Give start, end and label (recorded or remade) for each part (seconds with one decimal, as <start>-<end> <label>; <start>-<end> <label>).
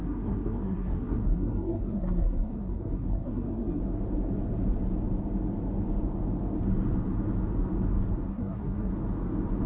0.0-3.8 remade; 3.8-8.3 recorded; 8.3-8.9 remade; 8.9-9.7 recorded